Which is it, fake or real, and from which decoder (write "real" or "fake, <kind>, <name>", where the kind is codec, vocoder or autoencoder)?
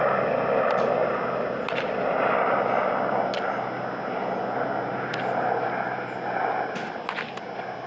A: real